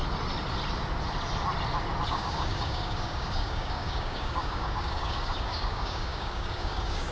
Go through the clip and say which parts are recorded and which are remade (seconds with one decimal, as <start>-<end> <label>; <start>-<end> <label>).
0.0-2.1 recorded; 2.1-7.1 remade